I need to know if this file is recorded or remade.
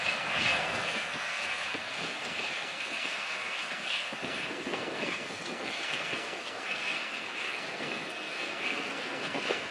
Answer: remade